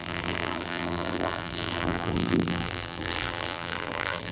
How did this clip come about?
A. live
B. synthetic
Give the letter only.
B